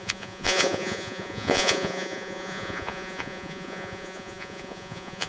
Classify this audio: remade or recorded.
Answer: remade